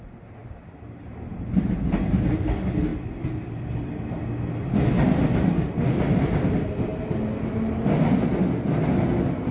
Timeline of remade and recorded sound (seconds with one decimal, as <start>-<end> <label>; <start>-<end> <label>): 0.0-0.4 recorded; 0.4-2.3 remade; 2.3-9.5 recorded